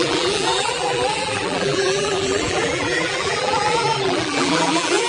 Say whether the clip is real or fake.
fake